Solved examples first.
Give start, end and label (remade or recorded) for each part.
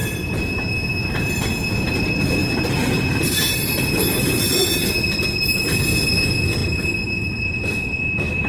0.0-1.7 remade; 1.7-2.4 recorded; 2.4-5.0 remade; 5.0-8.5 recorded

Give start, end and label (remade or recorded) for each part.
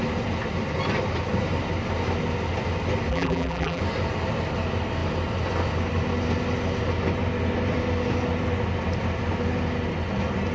0.0-3.1 recorded; 3.1-3.8 remade; 3.8-10.5 recorded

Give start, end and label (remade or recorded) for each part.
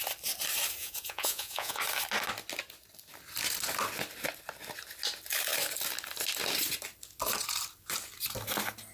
0.0-0.8 recorded; 0.8-1.8 remade; 1.8-8.9 recorded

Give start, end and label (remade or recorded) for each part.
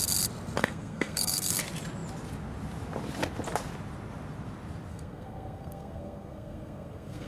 0.0-0.6 recorded; 0.6-1.6 remade; 1.6-4.9 recorded; 4.9-7.3 remade